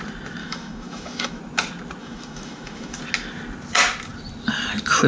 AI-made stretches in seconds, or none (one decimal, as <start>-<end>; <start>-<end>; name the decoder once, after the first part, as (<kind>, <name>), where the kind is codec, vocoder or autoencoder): 0.4-1.4 (autoencoder, DAC-VAE); 2.0-3.0